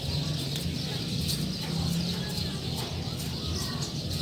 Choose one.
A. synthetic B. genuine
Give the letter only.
B